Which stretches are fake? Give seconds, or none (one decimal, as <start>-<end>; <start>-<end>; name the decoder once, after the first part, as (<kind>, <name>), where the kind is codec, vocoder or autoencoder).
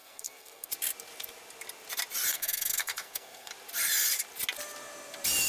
0.0-0.7 (codec, SNAC); 2.3-3.5